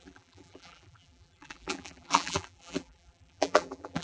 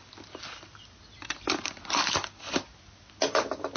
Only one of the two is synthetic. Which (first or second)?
first